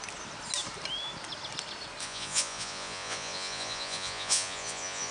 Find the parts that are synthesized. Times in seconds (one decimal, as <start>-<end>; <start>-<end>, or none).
2.0-5.1